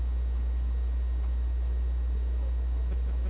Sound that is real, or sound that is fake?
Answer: real